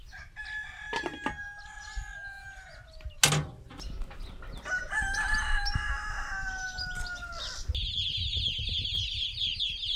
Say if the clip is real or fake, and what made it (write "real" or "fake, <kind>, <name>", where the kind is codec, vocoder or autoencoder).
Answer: real